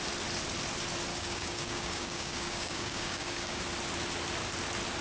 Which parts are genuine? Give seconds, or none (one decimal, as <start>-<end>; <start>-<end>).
0.0-1.1; 3.6-5.0